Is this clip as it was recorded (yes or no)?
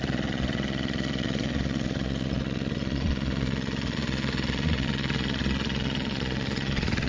no